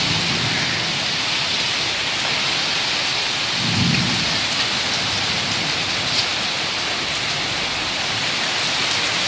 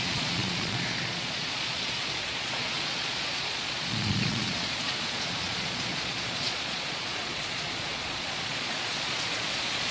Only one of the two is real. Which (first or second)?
first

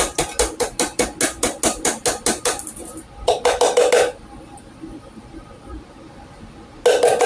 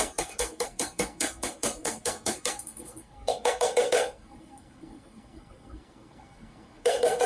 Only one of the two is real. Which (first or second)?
first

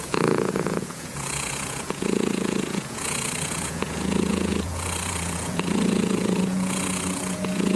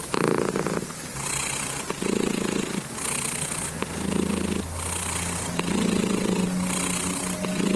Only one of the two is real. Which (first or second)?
second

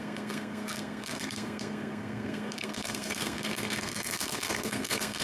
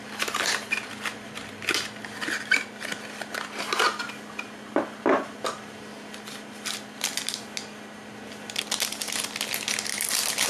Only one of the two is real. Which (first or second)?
second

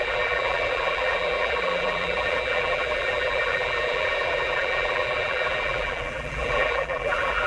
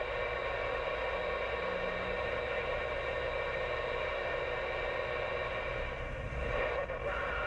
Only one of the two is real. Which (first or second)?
second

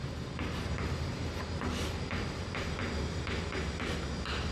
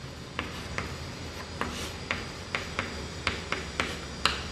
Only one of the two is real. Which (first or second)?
second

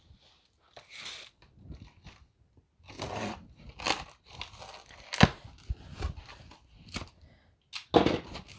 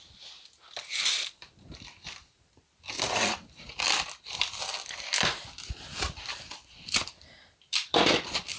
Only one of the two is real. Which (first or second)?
first